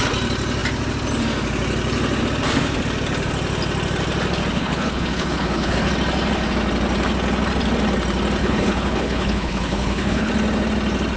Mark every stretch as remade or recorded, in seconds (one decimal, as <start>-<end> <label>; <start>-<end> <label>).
0.0-4.5 recorded; 4.5-5.9 remade; 5.9-8.4 recorded; 8.4-10.3 remade; 10.3-11.2 recorded